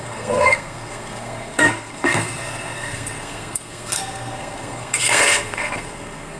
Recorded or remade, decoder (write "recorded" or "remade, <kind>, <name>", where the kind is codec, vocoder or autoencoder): remade, codec, SNAC